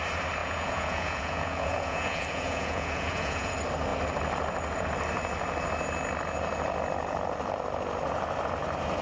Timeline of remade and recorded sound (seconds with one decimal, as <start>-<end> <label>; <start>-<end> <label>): 0.0-0.4 recorded; 0.4-3.5 remade; 3.5-9.0 recorded